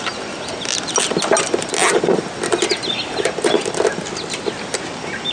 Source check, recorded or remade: recorded